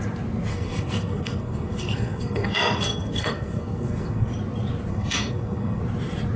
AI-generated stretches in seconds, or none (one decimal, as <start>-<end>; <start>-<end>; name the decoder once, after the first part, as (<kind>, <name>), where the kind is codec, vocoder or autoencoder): 0.5-4.3 (codec, SNAC); 4.9-5.8